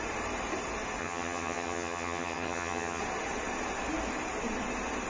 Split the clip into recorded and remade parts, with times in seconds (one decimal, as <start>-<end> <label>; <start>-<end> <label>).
0.0-1.0 recorded; 1.0-3.0 remade; 3.0-5.1 recorded